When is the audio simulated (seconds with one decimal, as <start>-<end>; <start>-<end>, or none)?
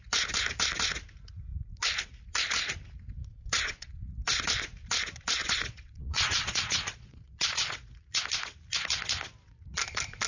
3.3-3.9; 5.4-8.2